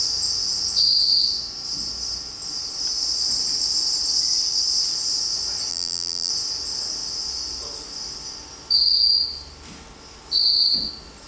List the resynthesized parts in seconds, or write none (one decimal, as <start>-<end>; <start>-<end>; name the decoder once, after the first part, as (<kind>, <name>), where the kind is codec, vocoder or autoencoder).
5.7-6.3 (vocoder, BigVGAN v2)